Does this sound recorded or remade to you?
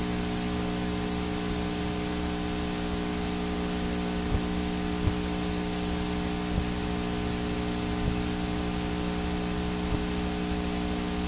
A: recorded